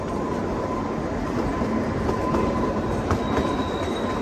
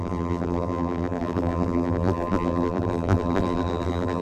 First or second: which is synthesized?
second